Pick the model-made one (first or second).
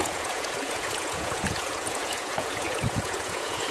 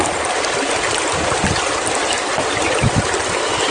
first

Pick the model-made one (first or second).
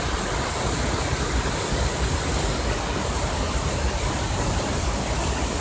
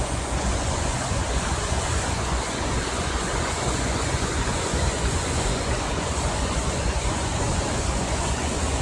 second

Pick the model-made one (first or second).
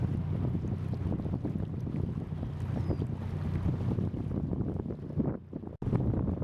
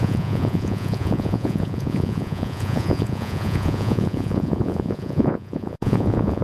second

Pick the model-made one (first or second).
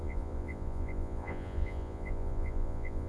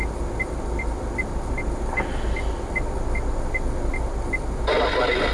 first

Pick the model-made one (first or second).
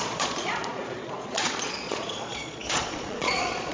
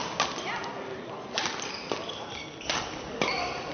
first